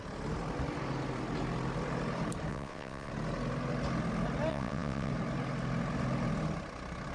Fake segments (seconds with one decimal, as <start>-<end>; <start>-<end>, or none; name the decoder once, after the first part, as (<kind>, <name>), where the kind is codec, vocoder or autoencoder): 2.5-3.1 (vocoder, WaveNeXt); 4.5-5.1